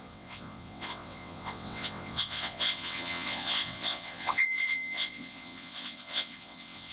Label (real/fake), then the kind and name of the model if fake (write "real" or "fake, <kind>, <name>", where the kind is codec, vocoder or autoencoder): fake, vocoder, WaveNeXt